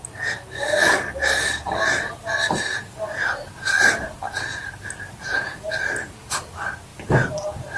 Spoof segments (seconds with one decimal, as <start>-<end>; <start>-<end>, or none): none